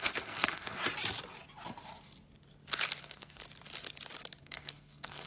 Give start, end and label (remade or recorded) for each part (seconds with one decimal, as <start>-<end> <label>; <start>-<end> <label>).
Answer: 0.0-0.8 remade; 0.8-3.0 recorded; 3.0-3.4 remade; 3.4-4.4 recorded; 4.4-5.3 remade